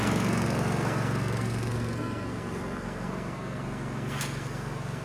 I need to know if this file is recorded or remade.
remade